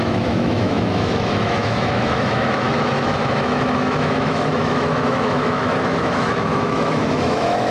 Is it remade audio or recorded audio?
remade